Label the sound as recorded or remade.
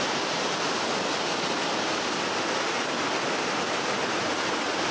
recorded